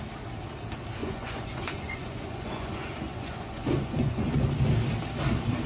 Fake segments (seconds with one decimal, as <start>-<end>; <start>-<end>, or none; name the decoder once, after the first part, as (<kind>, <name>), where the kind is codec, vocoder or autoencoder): 1.0-4.4 (vocoder, Vocos)